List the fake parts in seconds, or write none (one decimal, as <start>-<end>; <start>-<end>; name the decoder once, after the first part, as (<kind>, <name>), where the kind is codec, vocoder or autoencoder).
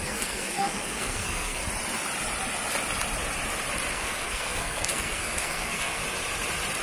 0.0-1.6 (codec, SNAC); 3.9-6.0